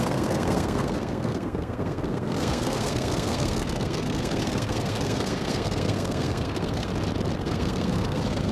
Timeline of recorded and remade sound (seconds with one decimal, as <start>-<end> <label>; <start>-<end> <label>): 0.0-6.9 remade; 6.9-7.4 recorded; 7.4-8.5 remade